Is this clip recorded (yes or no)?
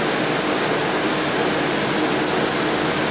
yes